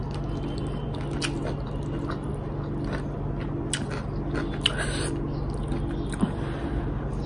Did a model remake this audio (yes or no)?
no